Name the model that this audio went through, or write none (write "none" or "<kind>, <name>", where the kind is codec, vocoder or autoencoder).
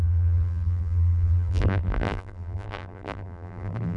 vocoder, BigVGAN v2